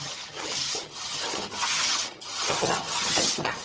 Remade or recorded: remade